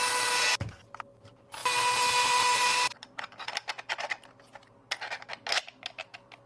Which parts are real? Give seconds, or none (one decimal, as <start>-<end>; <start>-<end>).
0.0-1.6; 3.9-6.5